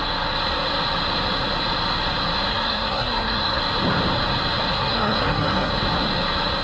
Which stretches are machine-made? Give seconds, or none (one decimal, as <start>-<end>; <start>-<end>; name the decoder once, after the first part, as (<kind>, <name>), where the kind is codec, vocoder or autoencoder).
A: 2.5-3.6 (codec, SNAC); 4.7-5.7